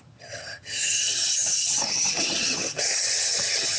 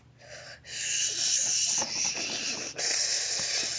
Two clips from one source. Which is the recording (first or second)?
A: second